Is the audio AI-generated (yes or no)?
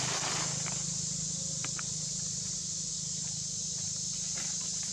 no